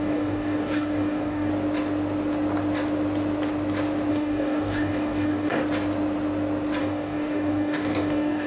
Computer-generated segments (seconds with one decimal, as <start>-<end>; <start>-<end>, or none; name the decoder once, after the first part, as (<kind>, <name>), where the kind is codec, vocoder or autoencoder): 0.0-1.5 (codec, DAC); 4.1-5.5; 6.8-8.5